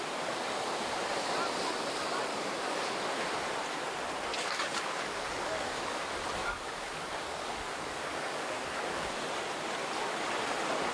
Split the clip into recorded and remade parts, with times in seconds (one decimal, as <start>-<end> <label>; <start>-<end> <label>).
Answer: 0.0-2.3 recorded; 2.3-2.8 remade; 2.8-4.3 recorded; 4.3-6.0 remade; 6.0-6.4 recorded; 6.4-9.1 remade; 9.1-10.9 recorded